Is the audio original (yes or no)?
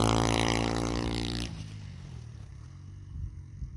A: no